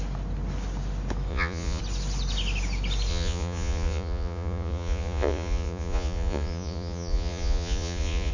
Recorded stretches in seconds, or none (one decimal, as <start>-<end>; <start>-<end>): 0.0-1.3; 1.8-3.1